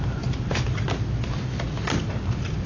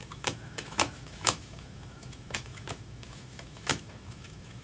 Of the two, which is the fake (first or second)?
second